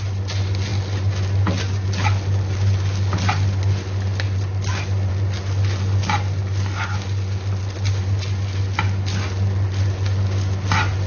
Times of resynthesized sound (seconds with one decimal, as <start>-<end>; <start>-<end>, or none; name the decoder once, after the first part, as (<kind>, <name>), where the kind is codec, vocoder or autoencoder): none